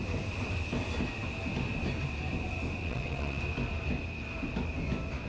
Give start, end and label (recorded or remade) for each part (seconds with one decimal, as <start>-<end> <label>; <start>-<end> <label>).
0.0-2.8 recorded; 2.8-3.4 remade; 3.4-5.3 recorded